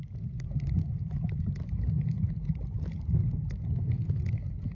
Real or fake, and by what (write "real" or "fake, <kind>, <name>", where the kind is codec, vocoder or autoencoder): real